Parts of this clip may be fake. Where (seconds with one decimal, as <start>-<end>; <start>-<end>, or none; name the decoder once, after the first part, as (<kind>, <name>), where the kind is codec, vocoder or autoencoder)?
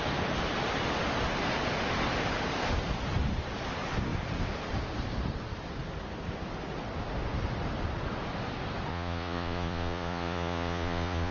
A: 8.9-11.3 (vocoder, Vocos)